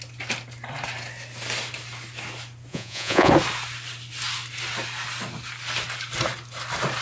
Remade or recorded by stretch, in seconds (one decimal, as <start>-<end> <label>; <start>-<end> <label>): 0.0-2.7 recorded; 2.7-3.3 remade; 3.3-7.0 recorded